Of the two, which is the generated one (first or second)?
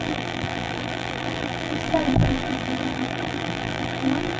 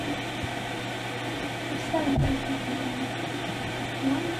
first